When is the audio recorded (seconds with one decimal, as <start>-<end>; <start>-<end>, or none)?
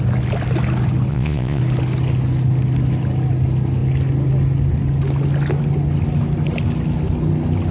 0.0-1.1; 1.6-7.7